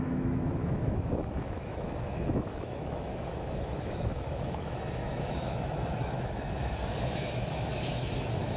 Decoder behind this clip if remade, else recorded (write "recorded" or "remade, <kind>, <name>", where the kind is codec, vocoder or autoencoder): remade, autoencoder, DAC-VAE